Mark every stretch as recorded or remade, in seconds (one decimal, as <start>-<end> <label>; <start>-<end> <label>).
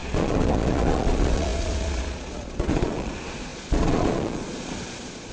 0.0-5.3 remade